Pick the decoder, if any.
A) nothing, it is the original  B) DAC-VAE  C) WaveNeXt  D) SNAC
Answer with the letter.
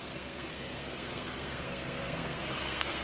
D